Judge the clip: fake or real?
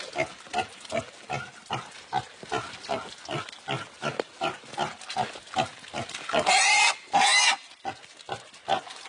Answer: real